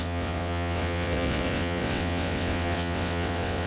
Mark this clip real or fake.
fake